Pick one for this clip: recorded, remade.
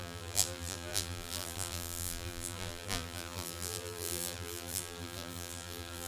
remade